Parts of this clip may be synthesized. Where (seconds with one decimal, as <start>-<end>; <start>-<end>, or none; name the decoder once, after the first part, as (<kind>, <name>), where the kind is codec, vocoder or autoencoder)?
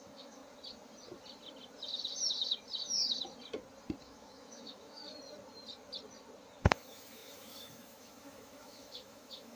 0.0-0.4 (autoencoder, DAC-VAE); 4.0-5.0; 6.6-9.6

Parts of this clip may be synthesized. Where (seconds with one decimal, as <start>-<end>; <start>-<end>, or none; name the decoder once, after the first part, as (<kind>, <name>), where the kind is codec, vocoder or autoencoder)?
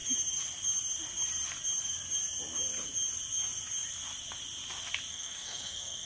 5.1-6.1 (codec, SNAC)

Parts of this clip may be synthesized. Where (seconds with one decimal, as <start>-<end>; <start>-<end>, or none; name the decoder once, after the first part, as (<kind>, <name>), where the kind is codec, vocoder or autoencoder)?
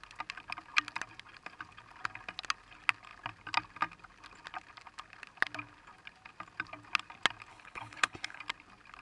7.5-8.4 (codec, HILCodec)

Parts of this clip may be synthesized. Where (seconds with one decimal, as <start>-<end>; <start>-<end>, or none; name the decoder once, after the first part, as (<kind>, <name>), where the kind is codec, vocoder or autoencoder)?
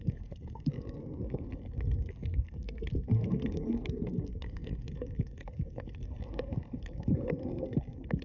0.0-8.2 (codec, SNAC)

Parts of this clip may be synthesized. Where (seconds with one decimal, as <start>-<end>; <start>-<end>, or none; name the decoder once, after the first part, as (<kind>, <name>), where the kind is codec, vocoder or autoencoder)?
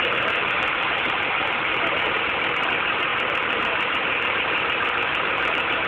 0.0-1.7 (vocoder, BigVGAN v2); 2.6-5.9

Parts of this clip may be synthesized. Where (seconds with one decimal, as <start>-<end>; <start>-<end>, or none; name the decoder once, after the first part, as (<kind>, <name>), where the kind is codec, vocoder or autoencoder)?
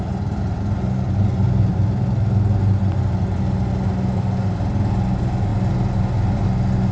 none